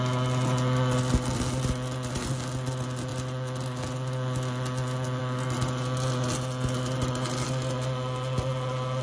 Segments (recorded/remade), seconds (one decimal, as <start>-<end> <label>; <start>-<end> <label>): 0.0-9.0 recorded